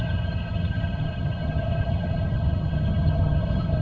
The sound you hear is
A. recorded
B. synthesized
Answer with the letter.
B